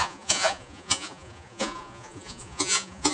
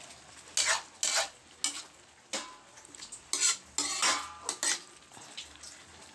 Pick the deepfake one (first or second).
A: first